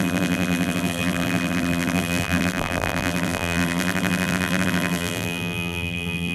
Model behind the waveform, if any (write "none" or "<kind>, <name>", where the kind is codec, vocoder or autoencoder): vocoder, BigVGAN v2